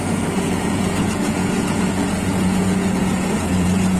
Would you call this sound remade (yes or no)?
yes